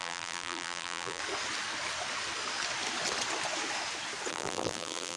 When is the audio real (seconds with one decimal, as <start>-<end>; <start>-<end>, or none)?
1.2-4.3